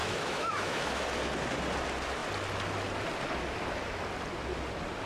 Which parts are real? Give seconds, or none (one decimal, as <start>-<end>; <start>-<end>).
1.0-5.1